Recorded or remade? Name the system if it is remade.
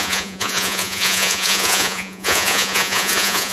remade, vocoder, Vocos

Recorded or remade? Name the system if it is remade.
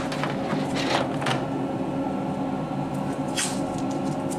recorded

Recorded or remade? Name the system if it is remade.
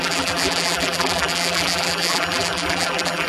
remade, vocoder, BigVGAN v2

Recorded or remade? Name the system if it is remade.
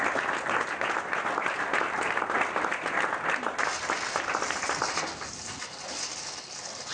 recorded